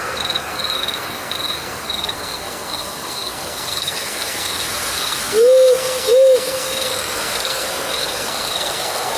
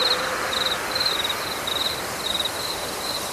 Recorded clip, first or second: second